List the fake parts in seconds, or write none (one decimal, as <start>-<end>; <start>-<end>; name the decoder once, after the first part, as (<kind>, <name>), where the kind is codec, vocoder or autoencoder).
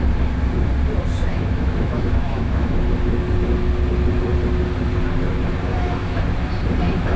1.3-2.8 (autoencoder, DAC-VAE); 5.7-6.2